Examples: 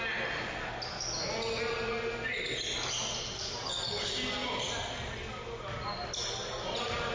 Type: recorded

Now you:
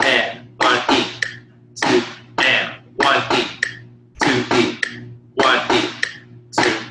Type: recorded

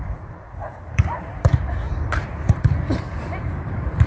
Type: remade